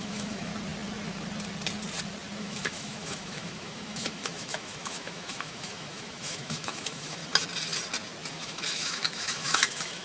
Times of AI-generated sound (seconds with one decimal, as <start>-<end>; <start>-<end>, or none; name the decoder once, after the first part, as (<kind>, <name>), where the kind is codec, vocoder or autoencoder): 0.0-0.5 (autoencoder, DAC-VAE); 2.4-7.2; 8.3-10.0